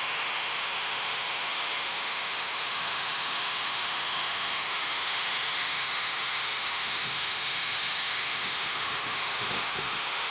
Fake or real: fake